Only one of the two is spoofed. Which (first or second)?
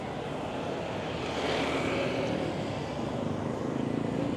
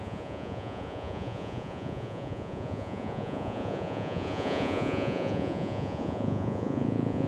second